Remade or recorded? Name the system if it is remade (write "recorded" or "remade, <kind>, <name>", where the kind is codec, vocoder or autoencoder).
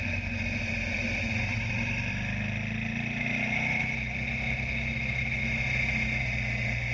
recorded